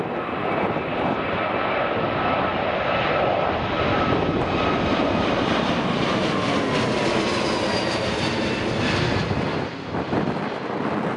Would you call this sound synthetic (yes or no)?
no